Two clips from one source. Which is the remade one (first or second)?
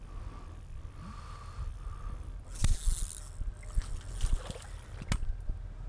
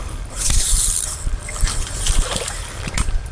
second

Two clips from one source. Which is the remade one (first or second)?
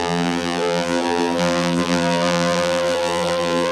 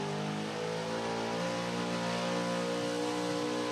first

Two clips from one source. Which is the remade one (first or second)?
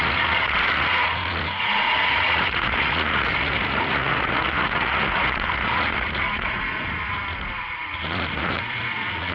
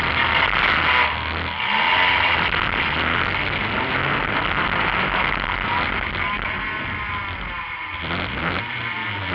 first